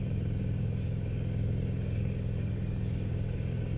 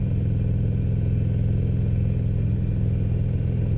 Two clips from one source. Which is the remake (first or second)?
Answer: first